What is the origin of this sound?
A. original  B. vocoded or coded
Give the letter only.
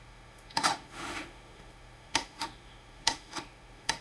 B